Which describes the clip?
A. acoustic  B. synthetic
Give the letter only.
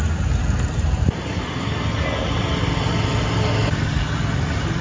A